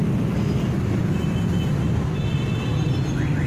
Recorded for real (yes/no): yes